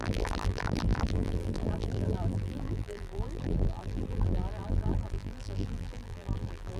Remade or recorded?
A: remade